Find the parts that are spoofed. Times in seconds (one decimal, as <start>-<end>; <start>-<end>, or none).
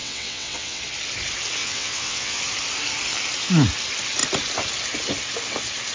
0.0-0.8; 1.6-2.4